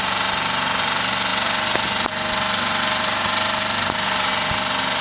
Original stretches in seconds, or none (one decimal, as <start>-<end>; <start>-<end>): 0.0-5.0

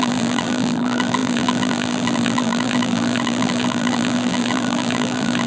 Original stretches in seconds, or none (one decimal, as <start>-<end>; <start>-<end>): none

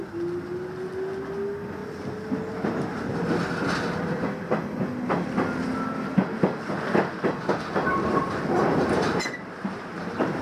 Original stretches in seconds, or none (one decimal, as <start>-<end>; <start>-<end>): 0.0-8.6